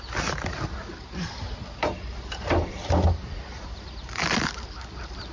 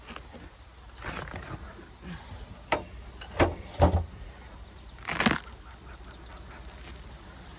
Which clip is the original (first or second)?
second